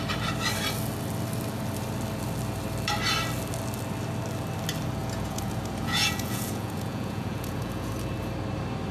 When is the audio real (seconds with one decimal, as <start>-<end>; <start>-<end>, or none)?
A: 0.0-5.0; 7.9-8.9

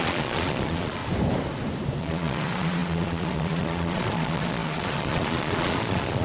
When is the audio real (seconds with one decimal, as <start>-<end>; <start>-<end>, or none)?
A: 1.0-2.0

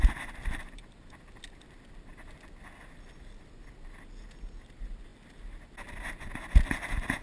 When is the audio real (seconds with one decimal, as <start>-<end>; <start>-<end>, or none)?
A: 0.0-7.2